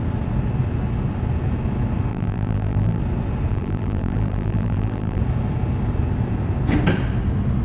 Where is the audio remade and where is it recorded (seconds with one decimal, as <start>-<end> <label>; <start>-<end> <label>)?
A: 0.0-2.1 recorded; 2.1-3.0 remade; 3.0-3.5 recorded; 3.5-5.2 remade; 5.2-7.6 recorded